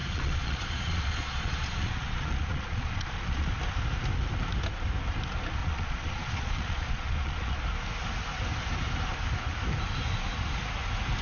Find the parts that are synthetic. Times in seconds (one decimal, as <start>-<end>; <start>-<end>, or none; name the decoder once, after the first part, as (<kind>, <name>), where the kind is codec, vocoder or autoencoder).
0.0-3.5 (vocoder, Vocos); 5.6-7.6